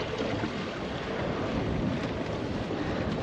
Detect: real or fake real